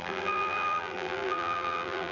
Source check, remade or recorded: remade